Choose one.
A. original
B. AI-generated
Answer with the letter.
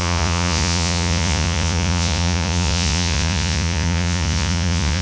B